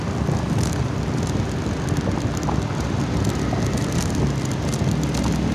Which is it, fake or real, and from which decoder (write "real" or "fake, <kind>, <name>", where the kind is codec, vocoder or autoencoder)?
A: real